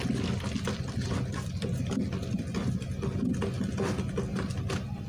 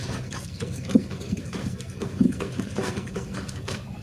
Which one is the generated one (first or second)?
second